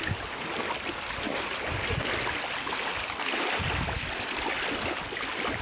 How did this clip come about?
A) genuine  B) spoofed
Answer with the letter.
A